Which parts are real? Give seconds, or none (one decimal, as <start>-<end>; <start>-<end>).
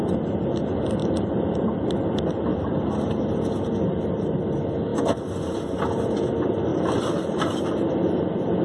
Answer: 0.0-1.0; 1.7-6.7; 7.6-8.6